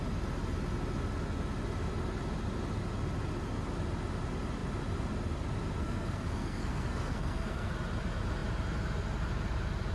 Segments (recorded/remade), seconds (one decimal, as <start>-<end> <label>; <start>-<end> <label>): 0.0-5.8 recorded; 5.8-7.7 remade; 7.7-9.9 recorded